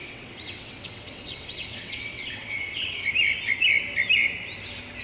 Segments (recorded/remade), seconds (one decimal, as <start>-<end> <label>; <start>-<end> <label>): 0.0-3.0 remade; 3.0-5.0 recorded